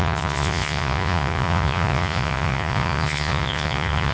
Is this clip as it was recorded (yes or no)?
no